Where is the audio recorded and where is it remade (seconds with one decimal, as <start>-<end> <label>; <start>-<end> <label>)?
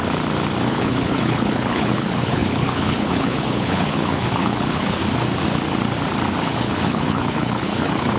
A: 0.0-0.7 recorded; 0.7-5.0 remade; 5.0-6.4 recorded; 6.4-8.2 remade